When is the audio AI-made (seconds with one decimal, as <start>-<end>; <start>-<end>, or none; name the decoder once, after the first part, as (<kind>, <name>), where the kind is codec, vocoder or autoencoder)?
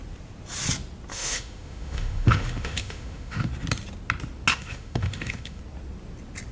1.1-3.5 (autoencoder, DAC-VAE); 4.5-5.6